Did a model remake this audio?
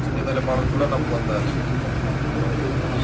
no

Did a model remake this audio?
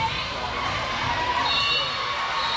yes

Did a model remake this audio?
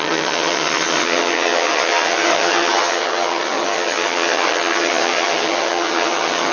yes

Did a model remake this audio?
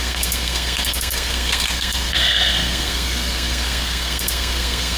yes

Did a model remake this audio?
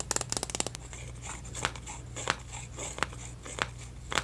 no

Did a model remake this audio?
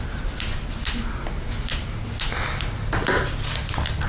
no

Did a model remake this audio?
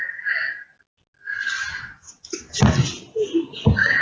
no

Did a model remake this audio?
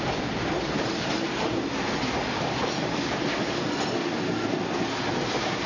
no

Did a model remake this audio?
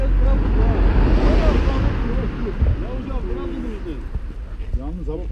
no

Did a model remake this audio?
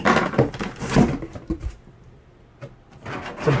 no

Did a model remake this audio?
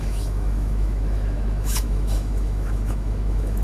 yes